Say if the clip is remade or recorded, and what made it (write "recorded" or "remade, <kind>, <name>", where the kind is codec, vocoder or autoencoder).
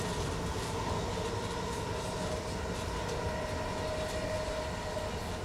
recorded